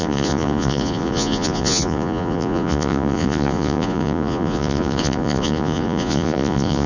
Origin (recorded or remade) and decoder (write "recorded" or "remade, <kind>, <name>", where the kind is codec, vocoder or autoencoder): remade, vocoder, Vocos